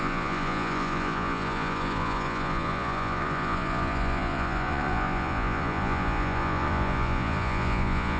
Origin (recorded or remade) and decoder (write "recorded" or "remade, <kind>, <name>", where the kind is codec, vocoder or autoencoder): remade, vocoder, Vocos